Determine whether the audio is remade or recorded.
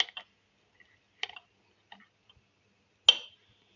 recorded